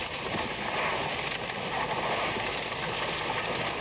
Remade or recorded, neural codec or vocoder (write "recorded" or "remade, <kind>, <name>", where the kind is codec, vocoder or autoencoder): recorded